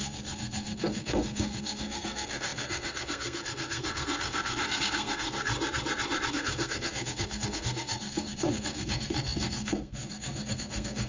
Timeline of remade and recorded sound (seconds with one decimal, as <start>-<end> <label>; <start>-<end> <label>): 0.0-5.5 remade; 5.5-6.3 recorded; 6.3-11.1 remade